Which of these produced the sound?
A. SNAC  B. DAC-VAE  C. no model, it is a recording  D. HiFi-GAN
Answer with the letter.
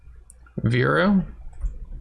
C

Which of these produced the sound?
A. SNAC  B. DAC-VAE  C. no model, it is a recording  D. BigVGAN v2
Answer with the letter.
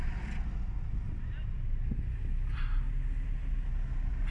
C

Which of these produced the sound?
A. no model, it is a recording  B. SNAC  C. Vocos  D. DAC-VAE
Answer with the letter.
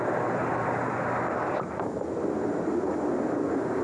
A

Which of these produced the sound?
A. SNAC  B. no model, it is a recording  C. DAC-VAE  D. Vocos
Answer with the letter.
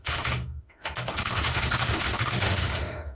C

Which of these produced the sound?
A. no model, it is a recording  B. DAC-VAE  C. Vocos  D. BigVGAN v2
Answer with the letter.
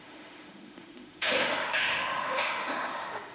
B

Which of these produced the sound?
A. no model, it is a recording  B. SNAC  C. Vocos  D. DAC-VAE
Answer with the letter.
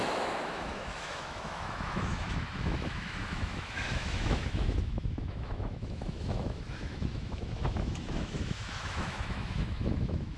D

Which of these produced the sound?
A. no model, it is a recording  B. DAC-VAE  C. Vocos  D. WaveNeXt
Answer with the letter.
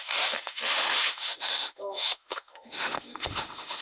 B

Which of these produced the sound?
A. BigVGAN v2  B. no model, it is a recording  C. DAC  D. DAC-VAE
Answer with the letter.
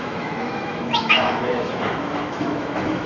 D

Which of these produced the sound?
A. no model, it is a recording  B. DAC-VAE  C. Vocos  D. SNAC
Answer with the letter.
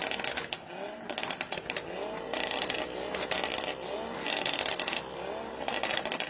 A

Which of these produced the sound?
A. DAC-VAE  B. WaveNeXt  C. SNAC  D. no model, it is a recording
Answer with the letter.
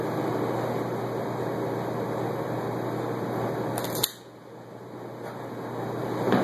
D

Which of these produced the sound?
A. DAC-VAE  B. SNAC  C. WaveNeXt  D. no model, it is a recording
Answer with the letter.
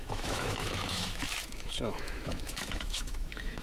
A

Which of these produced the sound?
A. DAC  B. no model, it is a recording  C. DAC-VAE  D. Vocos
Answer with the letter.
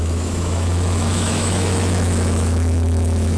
C